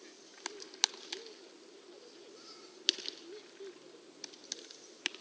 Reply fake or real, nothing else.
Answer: real